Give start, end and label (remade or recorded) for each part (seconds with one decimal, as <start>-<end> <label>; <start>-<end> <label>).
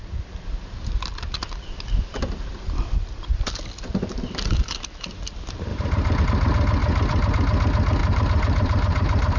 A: 0.0-5.7 recorded; 5.7-6.2 remade; 6.2-6.8 recorded; 6.8-7.3 remade; 7.3-8.0 recorded; 8.0-9.4 remade